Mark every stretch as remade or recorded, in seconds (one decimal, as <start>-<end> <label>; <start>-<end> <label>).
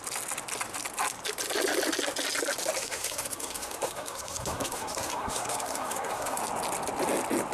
0.0-2.8 recorded; 2.8-6.4 remade; 6.4-7.5 recorded